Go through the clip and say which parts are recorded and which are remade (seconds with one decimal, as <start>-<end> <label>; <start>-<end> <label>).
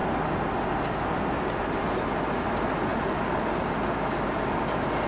0.0-5.1 recorded